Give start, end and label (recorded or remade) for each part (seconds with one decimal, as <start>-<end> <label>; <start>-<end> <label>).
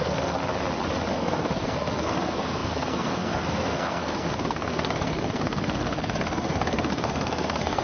0.0-0.4 remade; 0.4-1.1 recorded; 1.1-7.8 remade